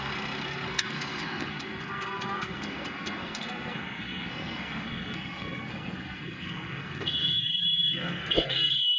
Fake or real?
fake